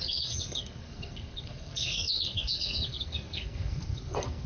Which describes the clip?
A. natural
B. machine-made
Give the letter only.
B